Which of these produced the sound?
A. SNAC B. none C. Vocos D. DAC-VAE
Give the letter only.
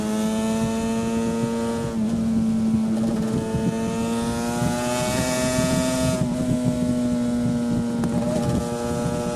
B